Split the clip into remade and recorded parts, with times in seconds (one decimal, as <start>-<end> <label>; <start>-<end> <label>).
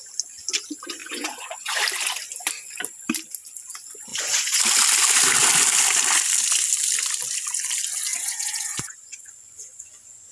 0.0-1.0 recorded; 1.0-1.8 remade; 1.8-4.1 recorded; 4.1-4.6 remade; 4.6-8.1 recorded; 8.1-10.3 remade